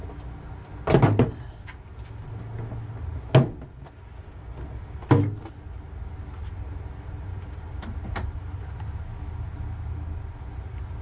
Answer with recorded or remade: recorded